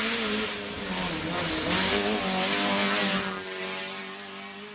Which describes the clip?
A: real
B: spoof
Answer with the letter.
A